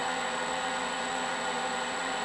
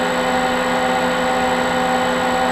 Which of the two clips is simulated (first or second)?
first